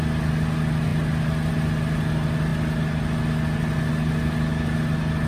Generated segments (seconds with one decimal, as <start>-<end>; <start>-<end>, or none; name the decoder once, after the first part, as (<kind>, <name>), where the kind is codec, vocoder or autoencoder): none